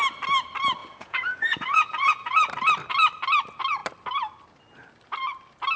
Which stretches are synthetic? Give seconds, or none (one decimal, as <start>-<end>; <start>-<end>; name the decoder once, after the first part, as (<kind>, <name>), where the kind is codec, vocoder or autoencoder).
0.8-2.5 (vocoder, Vocos)